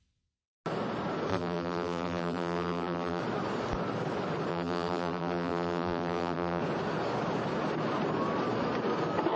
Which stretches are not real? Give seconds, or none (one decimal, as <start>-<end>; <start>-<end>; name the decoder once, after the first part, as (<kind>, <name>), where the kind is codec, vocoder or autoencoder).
1.3-3.2 (vocoder, BigVGAN v2); 4.5-6.6